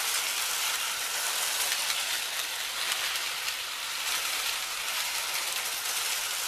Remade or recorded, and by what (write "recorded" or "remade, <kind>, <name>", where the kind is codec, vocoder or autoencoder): recorded